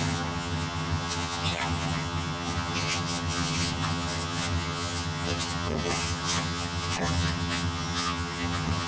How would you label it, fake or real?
fake